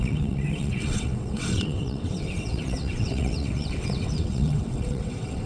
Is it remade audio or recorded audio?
remade